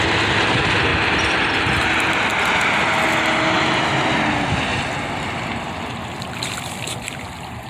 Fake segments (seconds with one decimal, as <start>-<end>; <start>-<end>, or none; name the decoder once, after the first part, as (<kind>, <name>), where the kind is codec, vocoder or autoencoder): none